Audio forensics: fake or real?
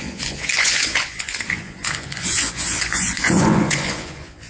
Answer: fake